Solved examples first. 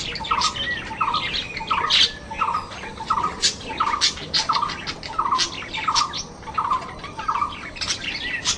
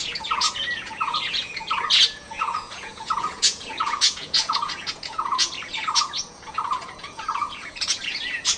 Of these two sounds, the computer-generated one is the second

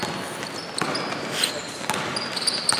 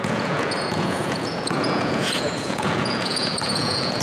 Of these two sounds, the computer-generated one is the second